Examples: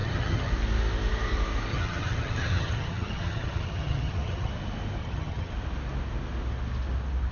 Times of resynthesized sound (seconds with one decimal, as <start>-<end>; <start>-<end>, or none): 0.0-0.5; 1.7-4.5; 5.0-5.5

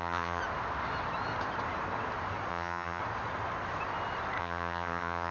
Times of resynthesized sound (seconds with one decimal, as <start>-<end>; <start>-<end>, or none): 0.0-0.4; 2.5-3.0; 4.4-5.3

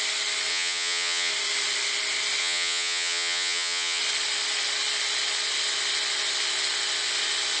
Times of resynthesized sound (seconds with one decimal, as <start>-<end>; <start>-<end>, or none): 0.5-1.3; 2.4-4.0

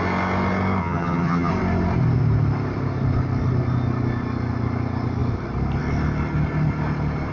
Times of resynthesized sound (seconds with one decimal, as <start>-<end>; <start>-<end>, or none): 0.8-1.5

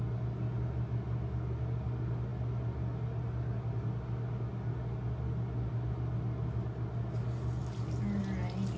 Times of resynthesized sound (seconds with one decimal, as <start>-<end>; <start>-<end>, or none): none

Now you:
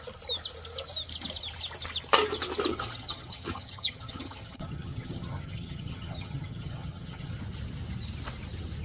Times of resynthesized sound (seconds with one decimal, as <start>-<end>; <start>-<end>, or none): 2.7-7.4